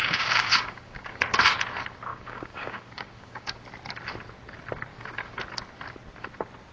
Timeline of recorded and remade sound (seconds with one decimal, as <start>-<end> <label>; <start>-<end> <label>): 0.0-1.2 remade; 1.2-2.1 recorded; 2.1-3.6 remade; 3.6-4.9 recorded; 4.9-5.4 remade; 5.4-6.7 recorded